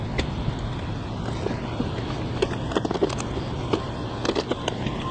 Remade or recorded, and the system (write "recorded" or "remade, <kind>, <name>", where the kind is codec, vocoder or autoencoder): recorded